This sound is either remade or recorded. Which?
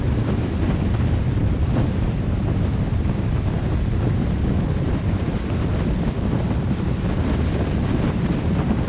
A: remade